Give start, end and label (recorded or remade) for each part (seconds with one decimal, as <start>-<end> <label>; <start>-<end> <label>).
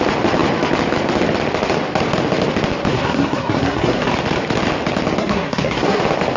0.0-2.9 recorded; 2.9-4.1 remade; 4.1-5.2 recorded; 5.2-6.0 remade; 6.0-6.4 recorded